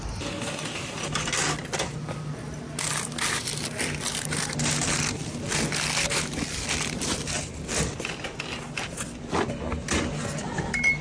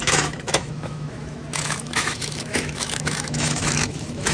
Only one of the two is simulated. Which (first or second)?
second